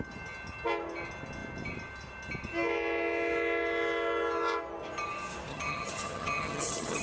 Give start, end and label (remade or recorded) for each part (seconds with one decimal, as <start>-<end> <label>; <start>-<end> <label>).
0.0-5.5 recorded; 5.5-7.0 remade